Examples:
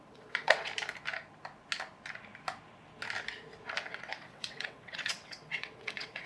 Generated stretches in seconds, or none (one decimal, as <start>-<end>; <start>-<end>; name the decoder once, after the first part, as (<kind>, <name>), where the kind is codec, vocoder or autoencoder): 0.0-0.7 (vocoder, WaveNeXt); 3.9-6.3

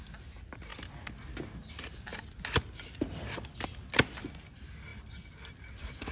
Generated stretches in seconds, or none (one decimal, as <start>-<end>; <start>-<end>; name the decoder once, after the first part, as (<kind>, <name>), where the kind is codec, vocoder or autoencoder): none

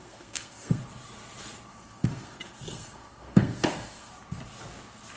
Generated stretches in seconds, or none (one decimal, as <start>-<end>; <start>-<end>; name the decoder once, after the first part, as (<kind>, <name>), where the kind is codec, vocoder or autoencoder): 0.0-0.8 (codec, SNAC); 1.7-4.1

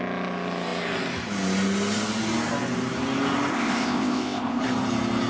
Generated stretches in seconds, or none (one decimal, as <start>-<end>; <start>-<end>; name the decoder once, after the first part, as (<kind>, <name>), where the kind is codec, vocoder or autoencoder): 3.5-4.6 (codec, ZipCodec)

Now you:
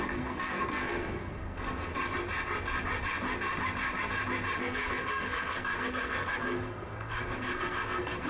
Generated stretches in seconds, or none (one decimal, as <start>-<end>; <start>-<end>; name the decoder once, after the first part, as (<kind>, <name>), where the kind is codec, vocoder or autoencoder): 0.0-1.9 (codec, SNAC); 4.6-8.3

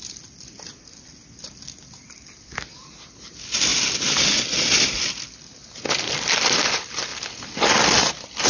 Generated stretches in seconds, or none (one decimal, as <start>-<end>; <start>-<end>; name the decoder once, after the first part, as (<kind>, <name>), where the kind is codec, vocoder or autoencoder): none